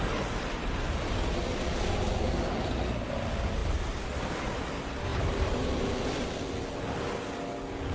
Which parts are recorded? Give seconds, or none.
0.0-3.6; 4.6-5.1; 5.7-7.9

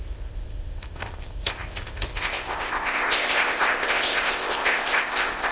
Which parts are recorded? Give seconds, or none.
none

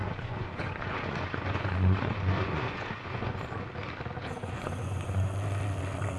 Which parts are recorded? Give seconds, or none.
3.6-4.2; 5.3-6.2

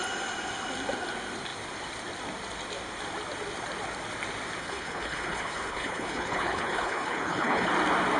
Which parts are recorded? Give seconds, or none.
0.0-4.6; 7.7-8.2

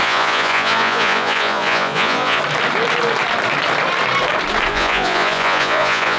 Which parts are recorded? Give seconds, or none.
2.4-4.7

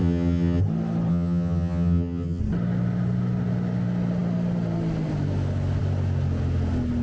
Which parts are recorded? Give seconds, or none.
0.6-1.1; 2.4-7.0

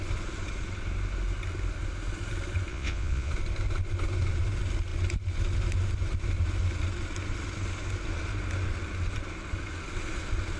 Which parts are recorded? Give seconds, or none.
0.0-2.7; 3.3-10.6

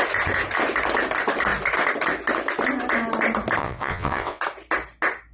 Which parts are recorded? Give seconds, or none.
0.0-3.6; 4.4-5.3